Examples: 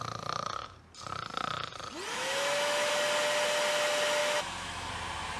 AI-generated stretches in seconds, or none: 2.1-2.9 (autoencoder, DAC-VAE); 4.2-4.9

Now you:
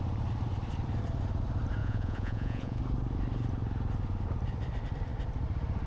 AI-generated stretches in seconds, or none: 1.8-2.8 (vocoder, Vocos)

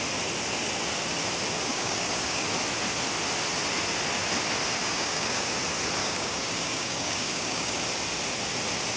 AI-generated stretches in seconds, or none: 1.7-2.4 (codec, DAC); 4.8-5.5; 6.0-7.8

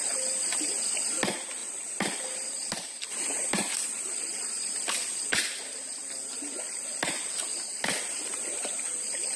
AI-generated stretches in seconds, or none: 1.6-5.3 (vocoder, BigVGAN v2); 7.7-8.8

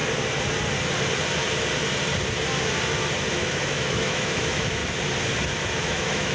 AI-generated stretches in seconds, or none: 3.3-4.8 (autoencoder, DAC-VAE); 5.8-6.3

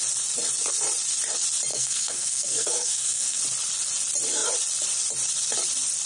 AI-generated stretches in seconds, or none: 1.7-3.4 (codec, SNAC)

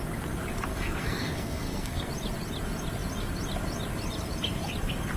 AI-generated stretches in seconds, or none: 0.7-2.1 (codec, SNAC)